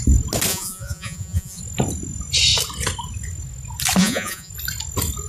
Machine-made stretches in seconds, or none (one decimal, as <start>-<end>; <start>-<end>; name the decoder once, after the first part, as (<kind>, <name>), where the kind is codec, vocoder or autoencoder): 0.5-1.6 (vocoder, Vocos); 4.0-4.5